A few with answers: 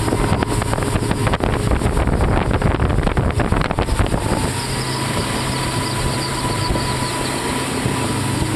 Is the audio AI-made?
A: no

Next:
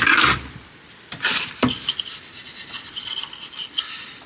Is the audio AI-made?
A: no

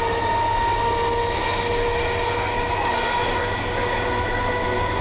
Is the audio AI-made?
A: no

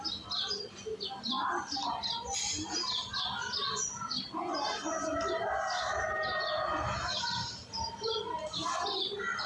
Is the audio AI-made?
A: no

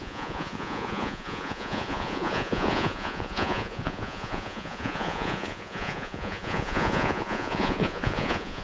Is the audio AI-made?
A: yes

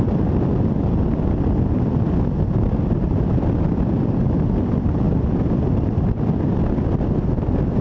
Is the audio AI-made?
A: no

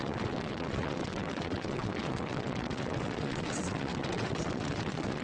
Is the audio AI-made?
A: yes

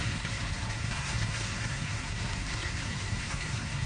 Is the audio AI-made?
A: yes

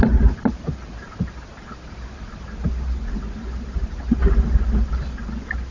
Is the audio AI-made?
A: no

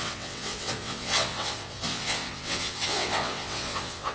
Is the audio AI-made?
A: yes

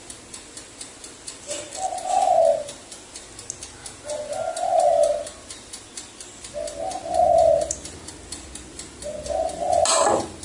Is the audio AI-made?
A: no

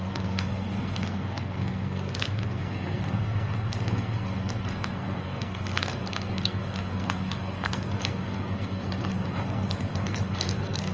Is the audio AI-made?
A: yes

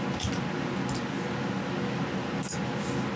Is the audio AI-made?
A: no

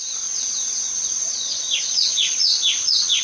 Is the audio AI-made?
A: yes